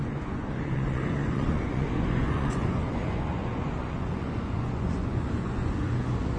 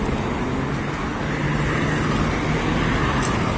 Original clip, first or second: second